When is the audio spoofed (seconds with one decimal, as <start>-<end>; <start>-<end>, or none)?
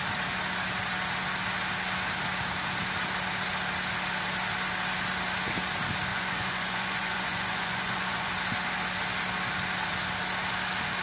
6.1-8.3